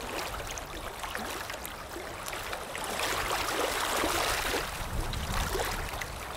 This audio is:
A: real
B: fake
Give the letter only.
A